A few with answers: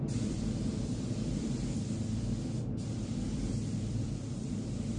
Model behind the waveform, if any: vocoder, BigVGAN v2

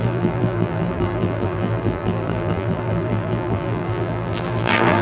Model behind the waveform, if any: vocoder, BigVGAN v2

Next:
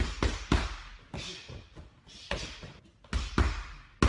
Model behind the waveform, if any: none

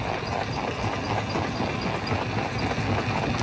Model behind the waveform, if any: none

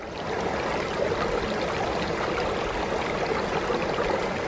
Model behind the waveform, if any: none